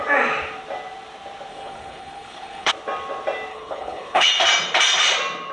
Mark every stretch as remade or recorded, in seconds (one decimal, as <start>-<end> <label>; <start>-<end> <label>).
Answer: 0.0-1.5 recorded; 1.5-2.7 remade; 2.7-3.5 recorded; 3.5-4.3 remade; 4.3-5.5 recorded